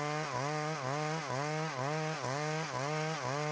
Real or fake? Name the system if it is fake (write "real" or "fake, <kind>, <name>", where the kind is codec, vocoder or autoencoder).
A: real